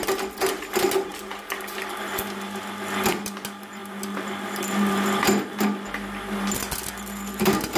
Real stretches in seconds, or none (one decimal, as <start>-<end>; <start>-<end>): 0.0-7.8